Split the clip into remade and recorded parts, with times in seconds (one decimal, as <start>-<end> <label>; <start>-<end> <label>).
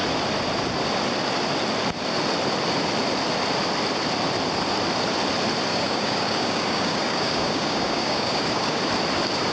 0.0-5.7 recorded; 5.7-8.8 remade; 8.8-9.5 recorded